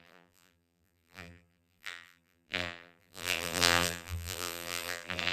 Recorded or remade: remade